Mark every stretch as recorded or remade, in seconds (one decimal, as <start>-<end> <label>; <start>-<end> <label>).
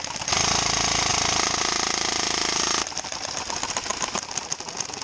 0.0-5.0 recorded